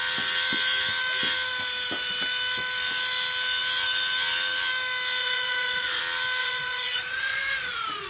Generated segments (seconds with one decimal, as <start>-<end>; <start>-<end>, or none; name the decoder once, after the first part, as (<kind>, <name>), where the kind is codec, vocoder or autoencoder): 5.2-6.0 (vocoder, Vocos); 6.4-8.1